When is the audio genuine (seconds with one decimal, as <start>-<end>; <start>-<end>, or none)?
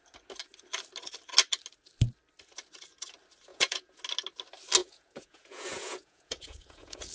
0.0-3.5; 4.0-4.8